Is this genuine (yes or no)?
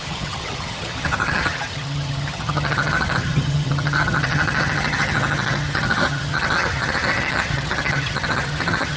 no